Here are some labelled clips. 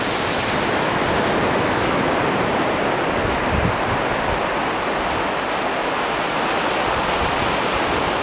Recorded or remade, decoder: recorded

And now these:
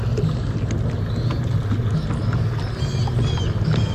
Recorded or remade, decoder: recorded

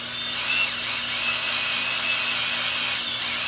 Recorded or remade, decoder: recorded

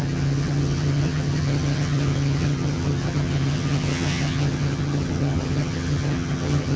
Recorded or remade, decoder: remade, vocoder, HiFi-GAN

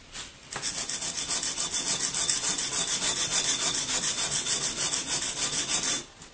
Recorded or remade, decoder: recorded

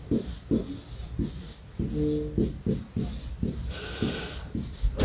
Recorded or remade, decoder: recorded